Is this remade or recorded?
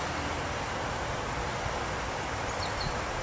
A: recorded